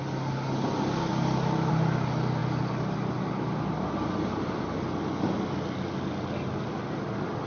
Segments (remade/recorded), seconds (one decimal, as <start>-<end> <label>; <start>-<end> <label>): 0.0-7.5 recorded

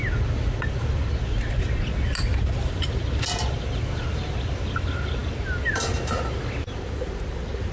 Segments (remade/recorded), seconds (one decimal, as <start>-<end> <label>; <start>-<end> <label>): 0.0-2.3 recorded; 2.3-3.0 remade; 3.0-7.7 recorded

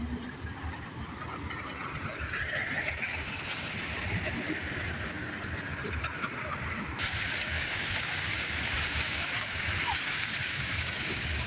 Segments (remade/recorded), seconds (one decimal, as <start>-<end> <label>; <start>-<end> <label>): 0.0-7.4 recorded; 7.4-11.5 remade

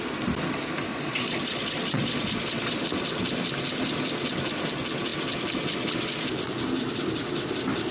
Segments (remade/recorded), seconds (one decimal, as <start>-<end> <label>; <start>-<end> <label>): 0.0-0.9 recorded; 0.9-2.8 remade; 2.8-7.9 recorded

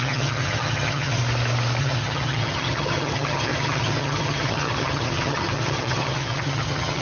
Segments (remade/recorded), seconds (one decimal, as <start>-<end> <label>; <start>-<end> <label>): 0.0-1.2 remade; 1.2-1.8 recorded; 1.8-7.0 remade